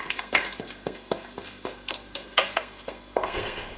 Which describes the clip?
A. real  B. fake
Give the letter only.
B